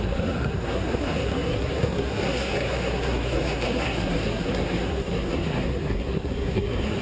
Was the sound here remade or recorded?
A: remade